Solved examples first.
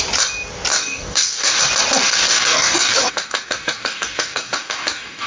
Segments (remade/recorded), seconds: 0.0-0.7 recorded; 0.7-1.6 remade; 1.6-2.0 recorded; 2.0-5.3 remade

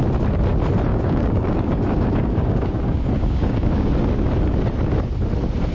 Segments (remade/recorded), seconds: 0.0-0.9 recorded; 0.9-3.9 remade; 3.9-5.7 recorded

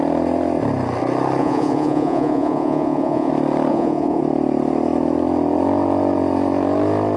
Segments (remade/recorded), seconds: 0.0-1.4 recorded; 1.4-3.3 remade; 3.3-3.7 recorded; 3.7-4.2 remade; 4.2-7.2 recorded

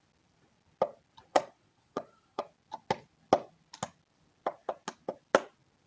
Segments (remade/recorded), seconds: 0.0-1.3 recorded; 1.3-2.4 remade; 2.4-5.9 recorded

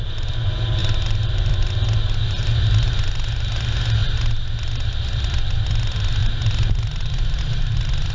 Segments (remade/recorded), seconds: 0.0-8.1 recorded

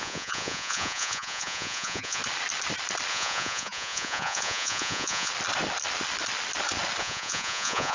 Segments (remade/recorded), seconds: 0.0-2.2 remade; 2.2-3.1 recorded; 3.1-5.3 remade; 5.3-7.0 recorded; 7.0-7.9 remade

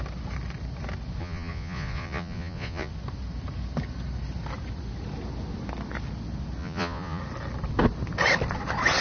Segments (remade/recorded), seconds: 0.0-1.2 recorded; 1.2-2.9 remade; 2.9-6.6 recorded; 6.6-7.2 remade; 7.2-9.0 recorded